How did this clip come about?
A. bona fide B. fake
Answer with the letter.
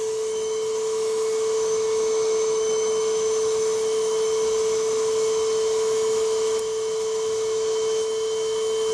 B